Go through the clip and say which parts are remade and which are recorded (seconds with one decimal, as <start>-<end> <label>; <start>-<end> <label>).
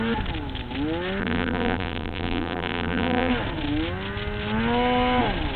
0.0-1.2 recorded; 1.2-3.3 remade; 3.3-5.6 recorded